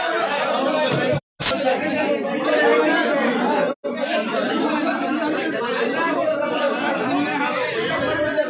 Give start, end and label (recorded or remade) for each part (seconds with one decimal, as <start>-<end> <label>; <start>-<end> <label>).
0.0-8.5 recorded